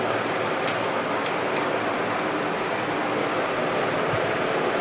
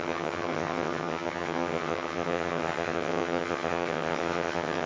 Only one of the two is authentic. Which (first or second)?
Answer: first